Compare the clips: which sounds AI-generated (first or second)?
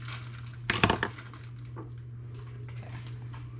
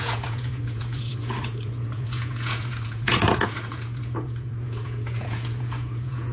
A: second